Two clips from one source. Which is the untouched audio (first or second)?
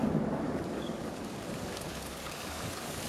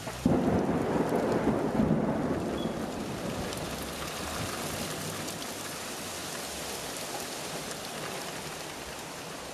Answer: second